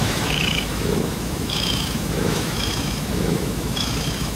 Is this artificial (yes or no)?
yes